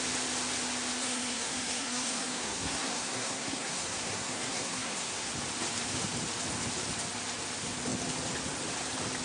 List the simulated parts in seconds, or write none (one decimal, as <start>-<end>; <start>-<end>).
1.0-5.3